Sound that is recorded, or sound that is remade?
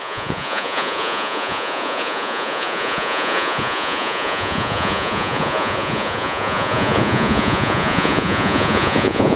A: remade